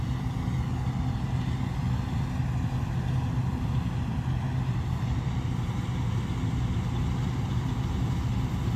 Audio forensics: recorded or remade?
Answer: recorded